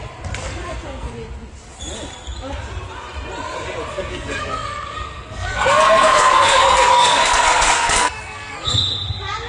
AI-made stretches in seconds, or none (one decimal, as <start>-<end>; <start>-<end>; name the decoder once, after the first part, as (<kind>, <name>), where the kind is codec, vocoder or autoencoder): 0.4-1.1 (codec, SNAC); 3.9-8.8